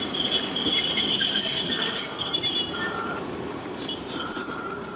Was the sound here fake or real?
fake